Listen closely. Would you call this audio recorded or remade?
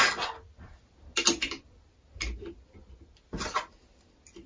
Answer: recorded